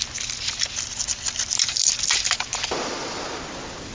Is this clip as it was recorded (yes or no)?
yes